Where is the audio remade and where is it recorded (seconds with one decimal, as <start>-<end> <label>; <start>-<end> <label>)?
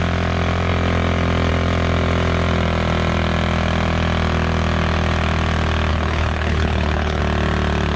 0.0-5.9 recorded; 5.9-7.2 remade; 7.2-8.0 recorded